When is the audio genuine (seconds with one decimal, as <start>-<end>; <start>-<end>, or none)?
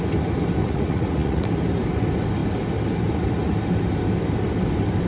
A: 0.0-0.6; 1.4-5.1